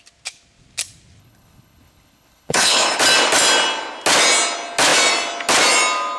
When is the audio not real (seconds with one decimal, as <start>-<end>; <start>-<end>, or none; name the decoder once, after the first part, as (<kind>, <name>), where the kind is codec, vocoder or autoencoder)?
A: 1.2-3.0 (codec, HILCodec)